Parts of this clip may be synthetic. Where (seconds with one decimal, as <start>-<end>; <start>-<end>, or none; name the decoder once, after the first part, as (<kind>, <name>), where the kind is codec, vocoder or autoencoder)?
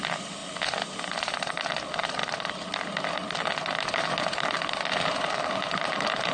0.0-0.4 (vocoder, BigVGAN v2); 1.0-6.3